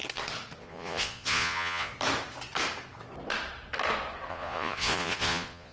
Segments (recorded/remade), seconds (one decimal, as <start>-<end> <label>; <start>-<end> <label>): 0.0-0.6 recorded; 0.6-1.9 remade; 1.9-4.3 recorded; 4.3-5.7 remade